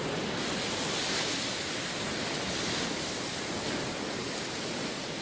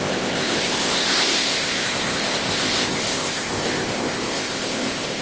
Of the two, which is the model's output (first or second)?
second